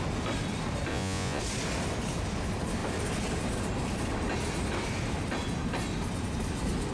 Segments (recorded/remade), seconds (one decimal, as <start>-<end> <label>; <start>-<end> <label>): 0.0-0.9 recorded; 0.9-1.4 remade; 1.4-6.9 recorded